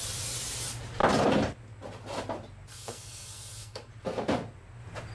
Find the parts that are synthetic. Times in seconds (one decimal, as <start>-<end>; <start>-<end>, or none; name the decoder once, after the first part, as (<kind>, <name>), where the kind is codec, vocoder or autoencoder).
2.7-3.9 (codec, SNAC)

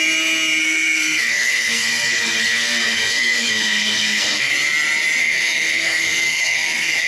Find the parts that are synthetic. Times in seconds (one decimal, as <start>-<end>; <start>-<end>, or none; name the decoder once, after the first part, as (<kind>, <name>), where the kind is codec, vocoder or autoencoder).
0.6-4.5 (codec, SNAC); 5.2-7.1

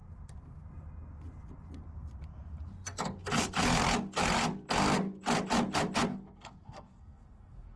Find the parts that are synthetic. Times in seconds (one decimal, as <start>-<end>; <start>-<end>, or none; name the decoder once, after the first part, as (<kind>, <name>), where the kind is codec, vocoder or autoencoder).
6.1-7.8 (codec, SNAC)

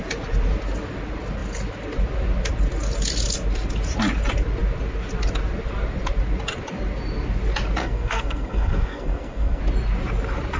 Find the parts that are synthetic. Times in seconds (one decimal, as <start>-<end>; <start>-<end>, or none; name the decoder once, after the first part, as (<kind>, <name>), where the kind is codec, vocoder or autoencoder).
7.8-9.6 (codec, SNAC)

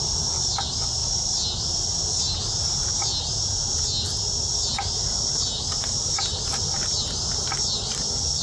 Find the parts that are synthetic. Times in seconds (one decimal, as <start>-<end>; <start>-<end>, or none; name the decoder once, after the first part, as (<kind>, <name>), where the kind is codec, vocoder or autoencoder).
none

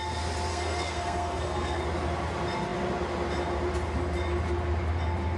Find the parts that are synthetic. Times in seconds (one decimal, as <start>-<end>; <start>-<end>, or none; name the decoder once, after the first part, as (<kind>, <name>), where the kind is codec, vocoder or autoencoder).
0.5-1.8 (codec, SNAC)

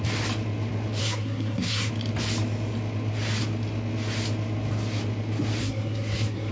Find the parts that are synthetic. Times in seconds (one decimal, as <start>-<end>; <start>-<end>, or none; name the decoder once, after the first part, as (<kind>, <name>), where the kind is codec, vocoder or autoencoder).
1.0-1.9 (codec, SNAC); 5.6-6.5